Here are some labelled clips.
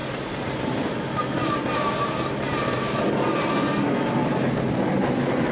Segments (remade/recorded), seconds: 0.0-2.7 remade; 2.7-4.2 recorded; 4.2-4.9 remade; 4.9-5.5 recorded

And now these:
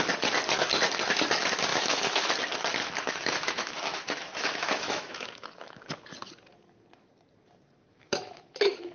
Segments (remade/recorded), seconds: 0.0-1.7 recorded; 1.7-2.3 remade; 2.3-2.8 recorded; 2.8-5.8 remade; 5.8-7.9 recorded; 7.9-8.9 remade

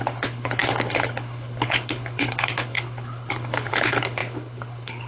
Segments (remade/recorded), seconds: 0.0-5.1 remade